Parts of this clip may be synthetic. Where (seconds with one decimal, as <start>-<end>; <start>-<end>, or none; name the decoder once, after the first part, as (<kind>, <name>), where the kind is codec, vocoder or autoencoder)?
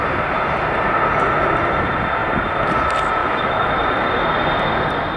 3.2-3.7 (autoencoder, DAC-VAE)